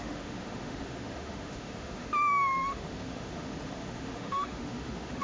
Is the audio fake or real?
fake